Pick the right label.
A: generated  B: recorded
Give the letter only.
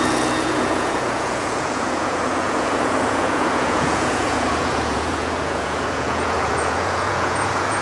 A